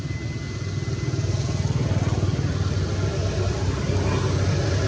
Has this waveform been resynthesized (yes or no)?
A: no